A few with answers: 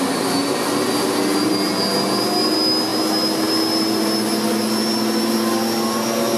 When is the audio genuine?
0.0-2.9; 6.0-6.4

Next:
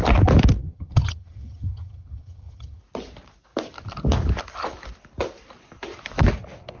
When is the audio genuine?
0.0-0.6; 2.8-6.8